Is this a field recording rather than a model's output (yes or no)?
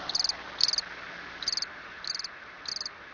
yes